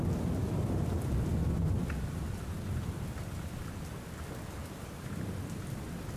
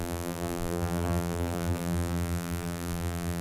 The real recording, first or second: first